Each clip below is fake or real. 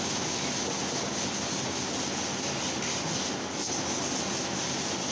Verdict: real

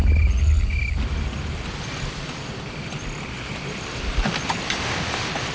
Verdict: real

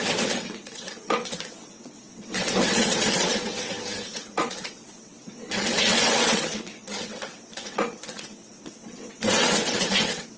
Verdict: fake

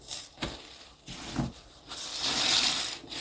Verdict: fake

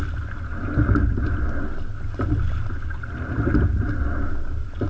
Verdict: real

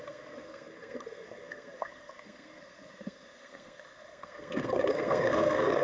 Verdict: fake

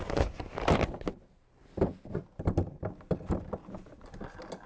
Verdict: real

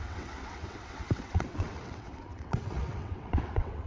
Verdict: fake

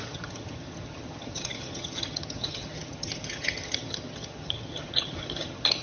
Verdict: fake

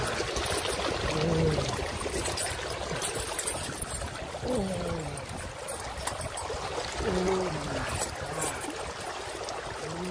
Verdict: real